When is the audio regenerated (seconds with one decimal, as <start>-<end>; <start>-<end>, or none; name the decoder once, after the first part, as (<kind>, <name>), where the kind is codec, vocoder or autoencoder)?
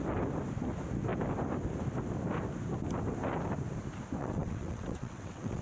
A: 4.2-5.6 (vocoder, WaveNeXt)